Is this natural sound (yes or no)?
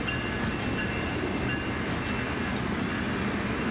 yes